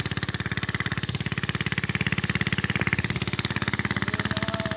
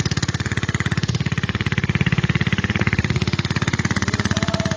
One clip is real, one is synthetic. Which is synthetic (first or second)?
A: second